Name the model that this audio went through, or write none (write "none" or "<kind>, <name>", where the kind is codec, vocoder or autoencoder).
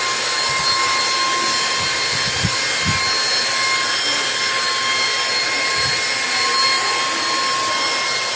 none